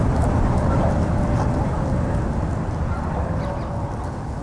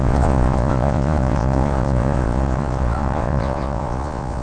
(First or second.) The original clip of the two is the first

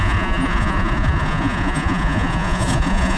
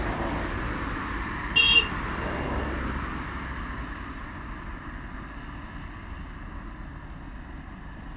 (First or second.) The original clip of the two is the second